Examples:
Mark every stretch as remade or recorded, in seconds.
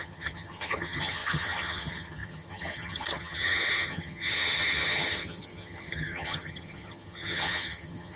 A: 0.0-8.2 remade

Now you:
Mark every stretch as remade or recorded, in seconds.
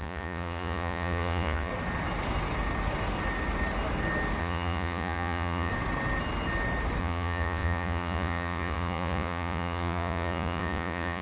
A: 0.0-1.7 remade; 1.7-4.4 recorded; 4.4-5.7 remade; 5.7-7.0 recorded; 7.0-11.2 remade